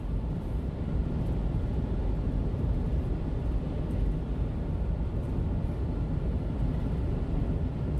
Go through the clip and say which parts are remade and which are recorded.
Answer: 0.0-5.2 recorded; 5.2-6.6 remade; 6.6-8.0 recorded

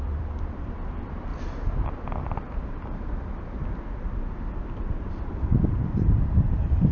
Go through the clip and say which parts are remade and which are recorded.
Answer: 0.0-1.3 remade; 1.3-5.1 recorded; 5.1-6.9 remade

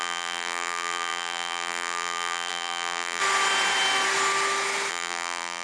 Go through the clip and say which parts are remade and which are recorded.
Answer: 0.0-3.2 remade; 3.2-4.9 recorded; 4.9-5.6 remade

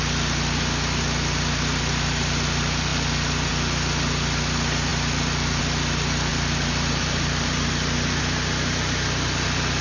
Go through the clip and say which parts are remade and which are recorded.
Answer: 0.0-4.9 recorded; 4.9-5.6 remade; 5.6-6.3 recorded; 6.3-8.2 remade; 8.2-9.8 recorded